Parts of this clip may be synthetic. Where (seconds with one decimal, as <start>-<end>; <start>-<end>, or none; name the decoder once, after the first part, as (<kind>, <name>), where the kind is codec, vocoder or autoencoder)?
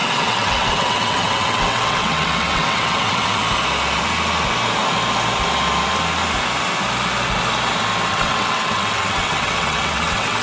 0.0-3.4 (vocoder, WaveNeXt); 8.1-10.4